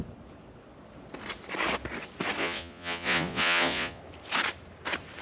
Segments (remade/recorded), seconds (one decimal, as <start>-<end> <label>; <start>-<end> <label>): 0.0-2.4 recorded; 2.4-4.0 remade; 4.0-5.2 recorded